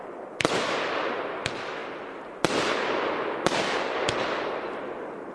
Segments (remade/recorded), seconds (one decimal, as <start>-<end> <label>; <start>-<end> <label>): 0.0-5.3 recorded